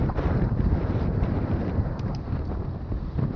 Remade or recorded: remade